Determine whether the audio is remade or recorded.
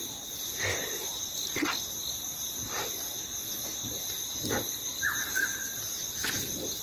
recorded